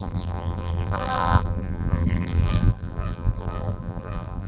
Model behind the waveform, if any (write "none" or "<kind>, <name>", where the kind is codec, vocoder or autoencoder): vocoder, BigVGAN v2